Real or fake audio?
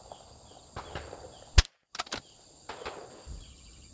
real